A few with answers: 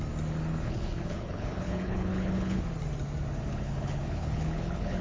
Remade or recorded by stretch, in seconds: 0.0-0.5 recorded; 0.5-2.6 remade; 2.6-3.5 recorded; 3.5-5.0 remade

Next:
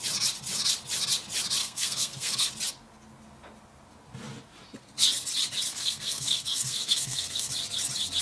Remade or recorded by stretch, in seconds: 0.0-1.6 recorded; 1.6-2.5 remade; 2.5-5.7 recorded; 5.7-7.5 remade; 7.5-8.2 recorded

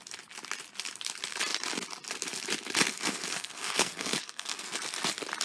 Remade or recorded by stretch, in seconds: 0.0-2.9 recorded; 2.9-4.8 remade; 4.8-5.4 recorded

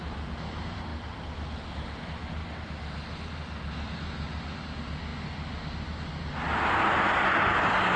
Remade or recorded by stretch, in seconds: 0.0-8.0 recorded

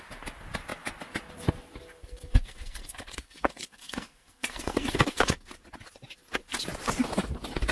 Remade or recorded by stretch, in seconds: 0.0-2.0 recorded; 2.0-5.5 remade; 5.5-7.7 recorded

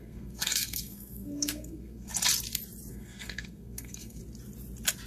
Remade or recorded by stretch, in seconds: 0.0-2.1 remade; 2.1-2.9 recorded; 2.9-4.2 remade; 4.2-5.1 recorded

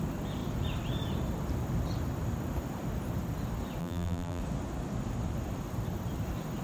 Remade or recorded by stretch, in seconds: 0.0-3.8 recorded; 3.8-4.4 remade; 4.4-6.6 recorded